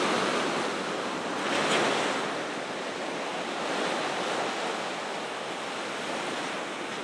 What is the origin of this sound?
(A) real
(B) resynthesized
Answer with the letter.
A